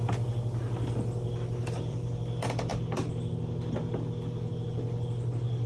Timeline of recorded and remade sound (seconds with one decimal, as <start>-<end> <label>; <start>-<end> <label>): 0.0-1.6 recorded; 1.6-2.1 remade; 2.1-5.7 recorded